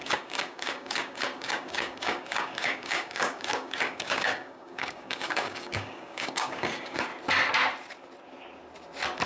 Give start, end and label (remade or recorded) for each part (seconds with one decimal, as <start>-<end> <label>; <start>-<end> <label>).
0.0-7.1 remade; 7.1-9.3 recorded

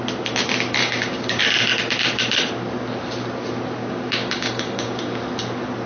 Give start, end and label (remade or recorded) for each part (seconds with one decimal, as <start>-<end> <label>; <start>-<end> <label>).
0.0-0.8 recorded; 0.8-1.4 remade; 1.4-3.8 recorded; 3.8-5.2 remade; 5.2-5.9 recorded